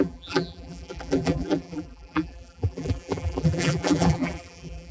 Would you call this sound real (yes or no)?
no